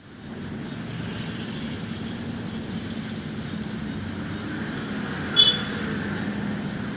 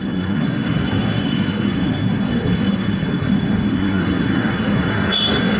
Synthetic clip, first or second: second